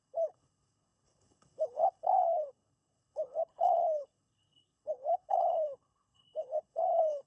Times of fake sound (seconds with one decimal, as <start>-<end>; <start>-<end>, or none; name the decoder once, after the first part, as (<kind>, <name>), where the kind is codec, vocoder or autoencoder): 0.0-7.3 (codec, HILCodec)